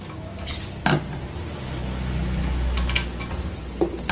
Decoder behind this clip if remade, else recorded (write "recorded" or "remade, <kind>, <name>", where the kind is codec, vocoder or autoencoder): recorded